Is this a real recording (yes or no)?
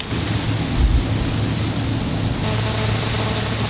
yes